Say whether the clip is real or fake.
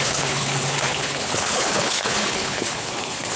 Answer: fake